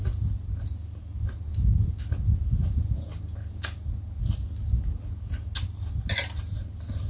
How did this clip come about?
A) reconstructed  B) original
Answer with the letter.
B